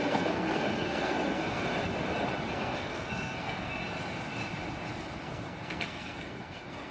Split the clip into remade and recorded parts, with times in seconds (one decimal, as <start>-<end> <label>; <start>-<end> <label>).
0.0-1.7 remade; 1.7-2.5 recorded; 2.5-3.8 remade; 3.8-5.2 recorded; 5.2-6.9 remade